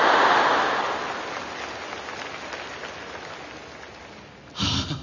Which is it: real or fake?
real